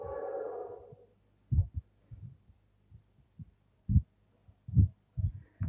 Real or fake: real